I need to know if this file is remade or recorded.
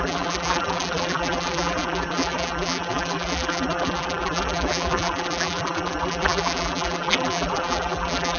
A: remade